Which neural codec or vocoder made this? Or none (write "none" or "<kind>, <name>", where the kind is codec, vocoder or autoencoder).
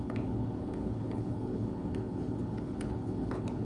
codec, HILCodec